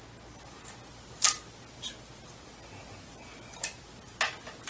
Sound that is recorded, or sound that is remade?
recorded